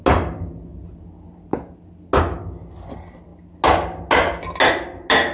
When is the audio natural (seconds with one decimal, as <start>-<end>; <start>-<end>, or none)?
0.0-5.3

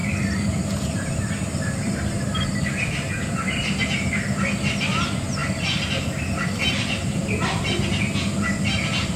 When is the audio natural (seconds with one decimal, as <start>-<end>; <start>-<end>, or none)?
0.0-7.2; 7.7-9.2

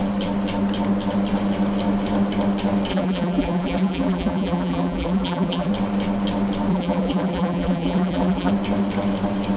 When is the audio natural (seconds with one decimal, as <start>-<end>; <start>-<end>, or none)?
0.0-2.9; 5.7-6.7; 8.5-9.6

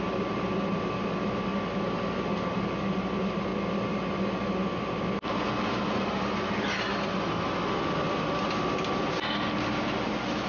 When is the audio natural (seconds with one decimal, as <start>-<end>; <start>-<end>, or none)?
0.0-10.5

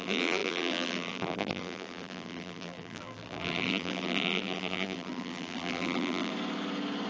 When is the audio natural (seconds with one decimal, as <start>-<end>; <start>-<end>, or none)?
6.3-7.1

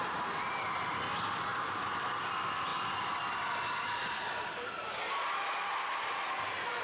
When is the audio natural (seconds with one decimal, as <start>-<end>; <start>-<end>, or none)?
0.0-1.5; 2.0-6.8

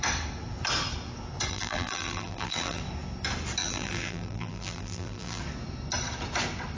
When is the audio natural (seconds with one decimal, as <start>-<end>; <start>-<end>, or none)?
0.0-1.5; 2.8-3.6; 5.4-6.8

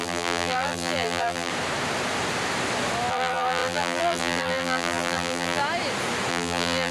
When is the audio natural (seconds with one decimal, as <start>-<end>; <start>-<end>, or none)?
1.5-3.1; 5.6-6.3